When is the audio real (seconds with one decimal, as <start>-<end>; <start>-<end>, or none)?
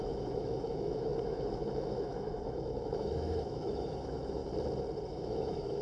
4.4-5.1